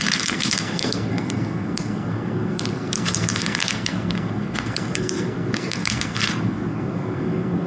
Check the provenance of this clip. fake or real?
fake